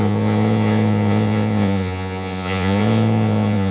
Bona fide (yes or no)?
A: no